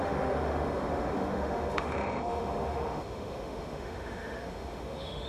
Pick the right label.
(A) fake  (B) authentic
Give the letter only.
A